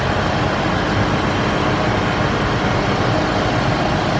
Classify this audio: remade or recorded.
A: recorded